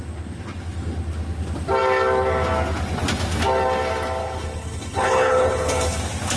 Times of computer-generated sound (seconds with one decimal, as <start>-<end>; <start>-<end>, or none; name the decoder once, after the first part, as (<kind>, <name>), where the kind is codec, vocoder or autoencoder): 4.2-6.0 (codec, HILCodec)